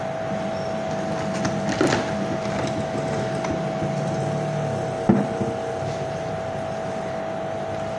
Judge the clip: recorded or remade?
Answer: recorded